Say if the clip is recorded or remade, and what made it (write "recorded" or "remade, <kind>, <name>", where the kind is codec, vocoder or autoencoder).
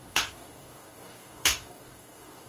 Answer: remade, codec, DAC